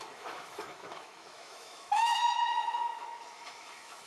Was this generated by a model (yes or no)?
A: yes